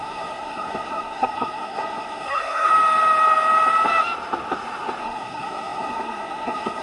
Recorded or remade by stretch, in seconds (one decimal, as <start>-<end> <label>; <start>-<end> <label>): 0.0-2.7 remade; 2.7-5.0 recorded; 5.0-6.8 remade